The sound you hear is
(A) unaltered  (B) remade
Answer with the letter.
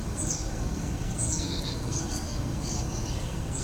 B